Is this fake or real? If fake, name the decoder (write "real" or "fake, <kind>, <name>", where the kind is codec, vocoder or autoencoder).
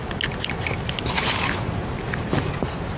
real